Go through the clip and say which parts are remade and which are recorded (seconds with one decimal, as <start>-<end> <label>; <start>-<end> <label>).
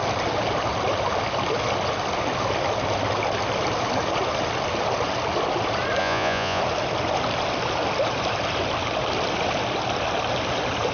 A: 0.0-6.0 recorded; 6.0-6.6 remade; 6.6-10.9 recorded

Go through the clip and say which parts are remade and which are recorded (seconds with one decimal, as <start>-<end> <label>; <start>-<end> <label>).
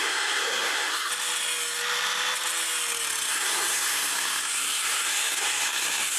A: 0.0-1.1 remade; 1.1-3.3 recorded; 3.3-6.2 remade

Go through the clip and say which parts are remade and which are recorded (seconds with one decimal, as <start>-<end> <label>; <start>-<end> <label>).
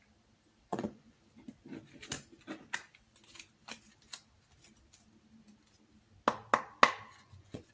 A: 0.0-0.7 recorded; 0.7-1.2 remade; 1.2-7.1 recorded; 7.1-7.7 remade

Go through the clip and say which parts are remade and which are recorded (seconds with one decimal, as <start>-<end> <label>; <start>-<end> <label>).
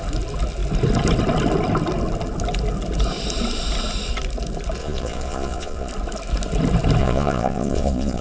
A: 0.0-4.8 recorded; 4.8-5.9 remade; 5.9-7.0 recorded; 7.0-8.2 remade